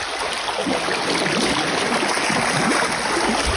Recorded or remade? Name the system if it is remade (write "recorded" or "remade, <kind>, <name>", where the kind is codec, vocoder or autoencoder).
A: recorded